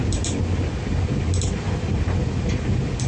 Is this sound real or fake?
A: real